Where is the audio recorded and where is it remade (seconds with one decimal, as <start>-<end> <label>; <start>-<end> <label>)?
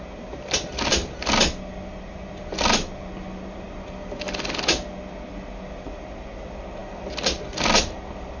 0.0-8.4 recorded